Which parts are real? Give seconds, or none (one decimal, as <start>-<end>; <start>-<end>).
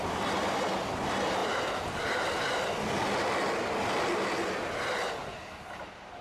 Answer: 0.0-6.2